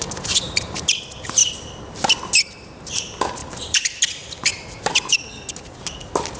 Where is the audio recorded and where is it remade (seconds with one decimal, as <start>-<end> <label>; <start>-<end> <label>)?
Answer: 0.0-3.4 recorded; 3.4-4.0 remade; 4.0-6.4 recorded